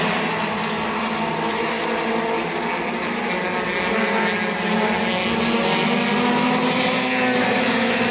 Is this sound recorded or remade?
recorded